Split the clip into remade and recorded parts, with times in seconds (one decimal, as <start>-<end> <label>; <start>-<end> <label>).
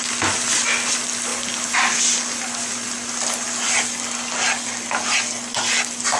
0.0-6.2 recorded